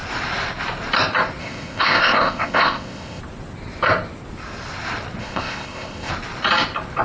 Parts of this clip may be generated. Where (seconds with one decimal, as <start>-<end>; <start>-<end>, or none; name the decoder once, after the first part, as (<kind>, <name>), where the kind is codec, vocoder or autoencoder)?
1.4-3.2 (codec, ZipCodec); 5.2-6.1